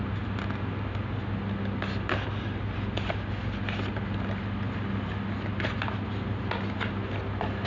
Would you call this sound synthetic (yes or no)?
no